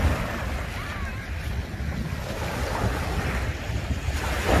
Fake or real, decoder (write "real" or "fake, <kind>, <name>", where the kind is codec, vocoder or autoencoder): real